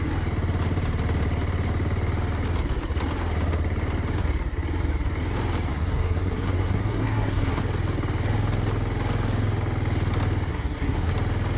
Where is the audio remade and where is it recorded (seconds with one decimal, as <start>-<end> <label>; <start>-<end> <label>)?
0.0-5.7 recorded; 5.7-7.6 remade; 7.6-10.5 recorded; 10.5-11.1 remade; 11.1-11.6 recorded